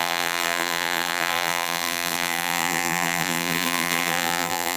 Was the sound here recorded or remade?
remade